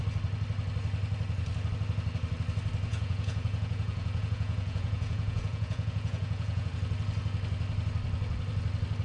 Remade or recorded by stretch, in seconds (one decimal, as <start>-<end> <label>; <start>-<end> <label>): 0.0-2.9 recorded; 2.9-6.7 remade; 6.7-9.0 recorded